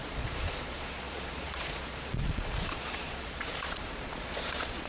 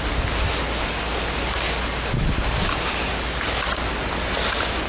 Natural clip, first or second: second